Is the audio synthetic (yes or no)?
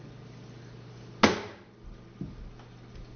no